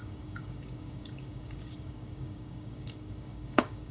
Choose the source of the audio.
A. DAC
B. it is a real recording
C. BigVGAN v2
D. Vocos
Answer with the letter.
A